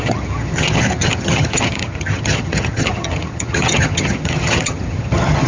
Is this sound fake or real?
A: fake